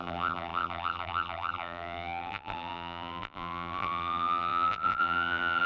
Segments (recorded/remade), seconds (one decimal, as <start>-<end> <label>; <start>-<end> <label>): 0.0-5.7 remade